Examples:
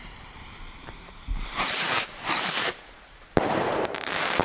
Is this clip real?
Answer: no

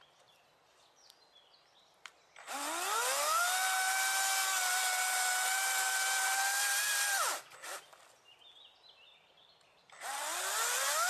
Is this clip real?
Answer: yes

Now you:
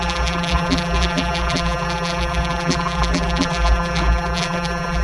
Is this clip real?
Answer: no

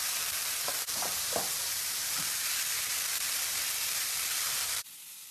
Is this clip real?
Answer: no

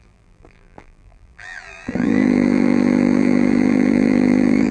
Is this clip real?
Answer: no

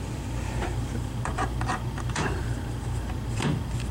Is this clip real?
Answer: no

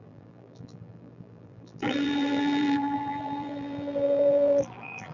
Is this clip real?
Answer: no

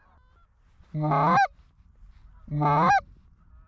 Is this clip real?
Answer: yes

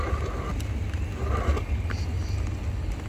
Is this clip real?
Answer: yes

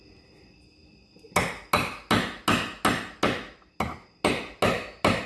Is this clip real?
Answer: yes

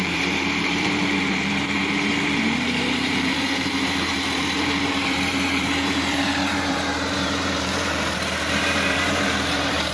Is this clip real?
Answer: no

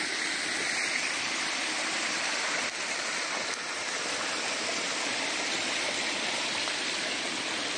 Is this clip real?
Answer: yes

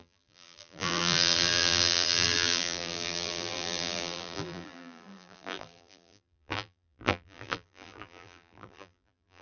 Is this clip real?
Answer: no